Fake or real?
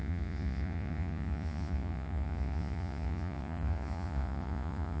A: fake